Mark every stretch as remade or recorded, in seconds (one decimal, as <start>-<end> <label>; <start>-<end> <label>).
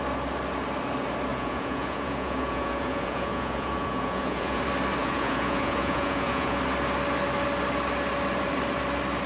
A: 0.0-1.3 recorded; 1.3-4.6 remade; 4.6-5.0 recorded; 5.0-6.6 remade; 6.6-9.3 recorded